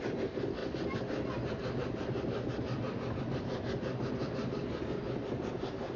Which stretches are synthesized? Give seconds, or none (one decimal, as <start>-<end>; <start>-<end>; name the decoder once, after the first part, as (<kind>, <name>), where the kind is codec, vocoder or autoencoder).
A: none